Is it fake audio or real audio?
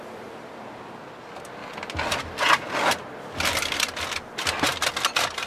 real